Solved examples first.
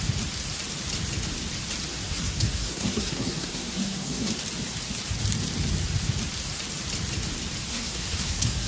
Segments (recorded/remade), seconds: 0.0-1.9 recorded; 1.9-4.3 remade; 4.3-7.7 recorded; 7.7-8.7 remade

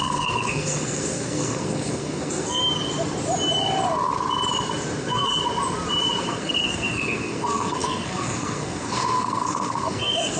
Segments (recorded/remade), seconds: 0.0-2.6 remade; 2.6-5.0 recorded; 5.0-5.4 remade; 5.4-6.2 recorded; 6.2-10.4 remade

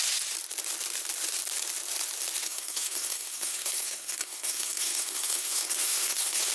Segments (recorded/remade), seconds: 0.0-2.4 recorded; 2.4-6.5 remade

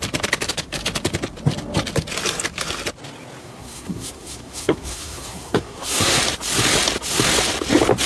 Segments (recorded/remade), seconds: 0.0-3.4 recorded; 3.4-6.2 remade; 6.2-8.1 recorded

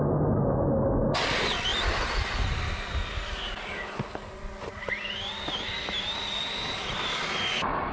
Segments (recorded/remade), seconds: 0.0-7.9 recorded

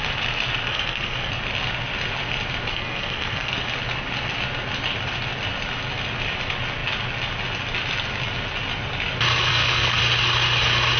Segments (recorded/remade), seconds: 0.0-0.7 recorded; 0.7-1.3 remade; 1.3-2.7 recorded; 2.7-3.5 remade; 3.5-9.5 recorded; 9.5-10.0 remade; 10.0-11.0 recorded